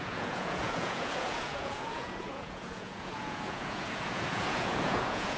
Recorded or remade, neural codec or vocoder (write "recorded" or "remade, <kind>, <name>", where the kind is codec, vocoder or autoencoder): remade, vocoder, Vocos